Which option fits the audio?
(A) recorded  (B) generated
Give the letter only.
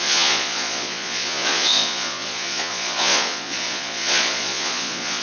B